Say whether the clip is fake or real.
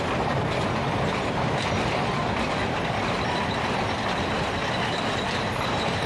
fake